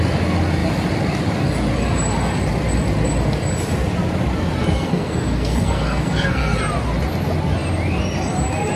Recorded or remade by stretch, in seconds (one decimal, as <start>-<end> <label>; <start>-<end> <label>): 0.0-4.6 recorded; 4.6-6.6 remade; 6.6-8.8 recorded